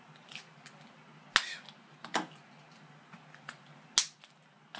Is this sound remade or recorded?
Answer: recorded